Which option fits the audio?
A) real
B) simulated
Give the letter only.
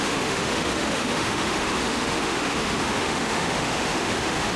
B